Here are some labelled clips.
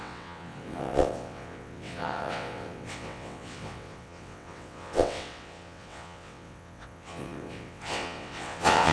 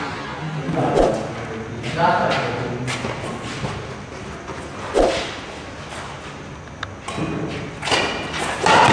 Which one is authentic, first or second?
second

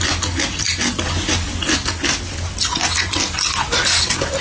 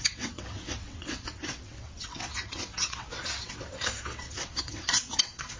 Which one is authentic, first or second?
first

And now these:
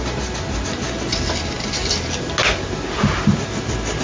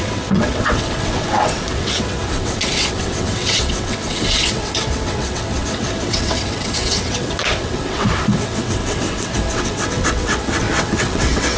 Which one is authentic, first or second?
first